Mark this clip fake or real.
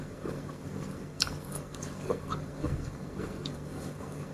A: fake